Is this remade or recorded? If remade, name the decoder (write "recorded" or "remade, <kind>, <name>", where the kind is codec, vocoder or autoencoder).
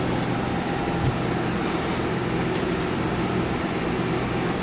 recorded